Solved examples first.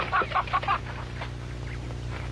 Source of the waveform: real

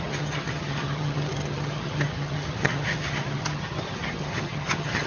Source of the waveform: fake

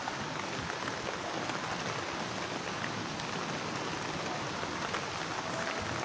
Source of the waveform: real